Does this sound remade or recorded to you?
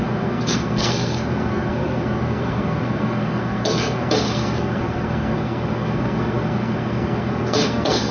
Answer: remade